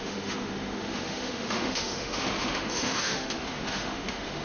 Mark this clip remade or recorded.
remade